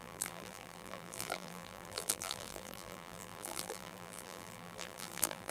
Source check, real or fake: fake